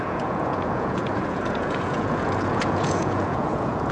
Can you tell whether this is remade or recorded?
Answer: remade